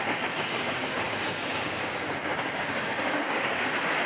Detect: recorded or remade remade